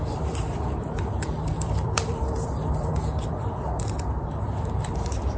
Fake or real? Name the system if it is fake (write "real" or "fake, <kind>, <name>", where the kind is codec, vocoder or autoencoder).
fake, vocoder, BigVGAN v2